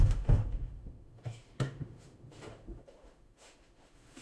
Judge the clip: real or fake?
fake